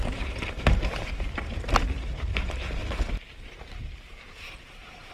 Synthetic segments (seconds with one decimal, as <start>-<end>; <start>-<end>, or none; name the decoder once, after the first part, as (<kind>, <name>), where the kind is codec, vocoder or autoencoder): 0.0-2.8 (vocoder, BigVGAN v2); 3.5-5.1